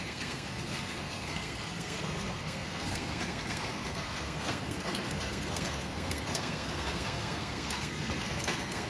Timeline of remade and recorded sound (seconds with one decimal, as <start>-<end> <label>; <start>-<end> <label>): 0.0-8.9 remade